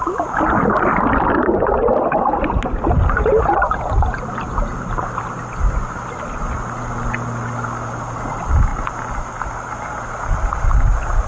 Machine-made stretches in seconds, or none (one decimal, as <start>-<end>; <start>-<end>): none